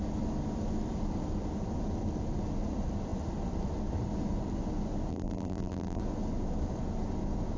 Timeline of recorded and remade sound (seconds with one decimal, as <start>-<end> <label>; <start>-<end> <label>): 0.0-5.1 recorded; 5.1-6.0 remade; 6.0-7.6 recorded